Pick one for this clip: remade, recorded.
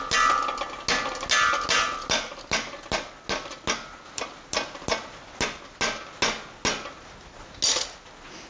recorded